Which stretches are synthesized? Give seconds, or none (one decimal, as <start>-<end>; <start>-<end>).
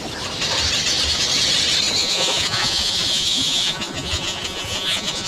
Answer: 2.0-5.3